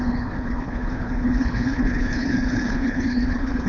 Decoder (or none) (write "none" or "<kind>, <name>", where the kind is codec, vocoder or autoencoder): codec, HILCodec